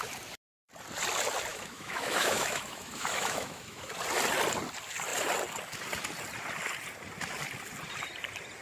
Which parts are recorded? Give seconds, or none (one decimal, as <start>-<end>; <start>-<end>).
0.0-1.5; 3.9-8.6